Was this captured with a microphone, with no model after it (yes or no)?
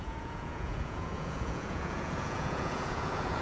no